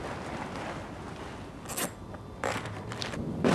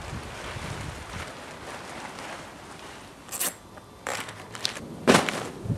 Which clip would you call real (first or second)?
first